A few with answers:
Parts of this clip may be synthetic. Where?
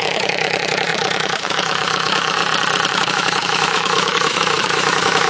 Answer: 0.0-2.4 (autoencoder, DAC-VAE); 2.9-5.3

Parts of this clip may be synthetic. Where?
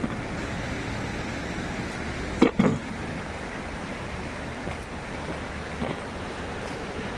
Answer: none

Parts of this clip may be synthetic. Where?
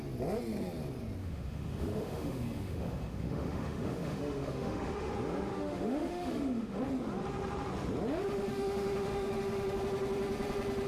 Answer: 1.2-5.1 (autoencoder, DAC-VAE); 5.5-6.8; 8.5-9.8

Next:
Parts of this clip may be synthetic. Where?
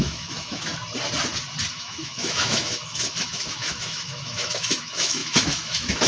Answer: 0.0-0.7 (autoencoder, DAC-VAE); 1.7-6.1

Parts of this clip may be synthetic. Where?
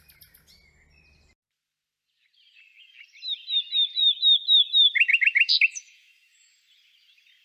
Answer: 4.0-6.5 (autoencoder, DAC-VAE)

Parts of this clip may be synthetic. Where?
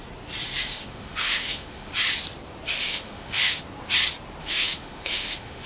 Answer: 0.7-1.9 (autoencoder, DAC-VAE); 2.7-3.6; 4.4-5.7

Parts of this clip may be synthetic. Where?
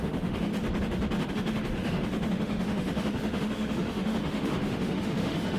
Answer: 0.0-0.5 (autoencoder, DAC-VAE); 1.3-5.6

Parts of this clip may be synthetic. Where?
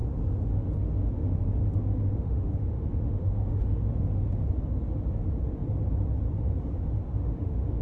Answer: 0.0-4.5 (autoencoder, DAC-VAE); 7.1-7.8